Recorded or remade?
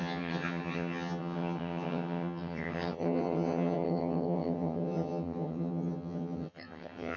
remade